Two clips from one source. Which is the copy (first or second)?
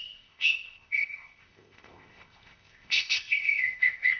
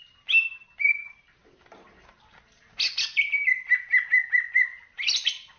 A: first